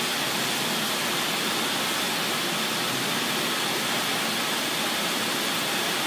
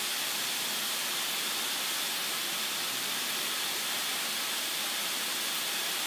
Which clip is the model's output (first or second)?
second